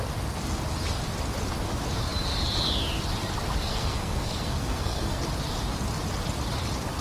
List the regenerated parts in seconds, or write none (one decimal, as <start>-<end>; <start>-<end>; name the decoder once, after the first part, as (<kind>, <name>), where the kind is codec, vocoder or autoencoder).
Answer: 3.6-5.2 (codec, SNAC)